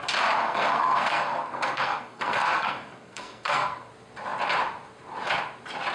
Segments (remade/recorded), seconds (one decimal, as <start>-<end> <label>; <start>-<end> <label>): 0.0-0.4 recorded; 0.4-3.9 remade; 3.9-5.9 recorded